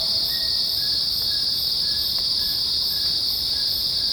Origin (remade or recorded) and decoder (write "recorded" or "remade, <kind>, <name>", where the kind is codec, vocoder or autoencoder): remade, vocoder, BigVGAN v2